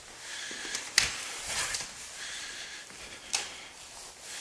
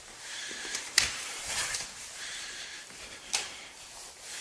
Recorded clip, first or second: first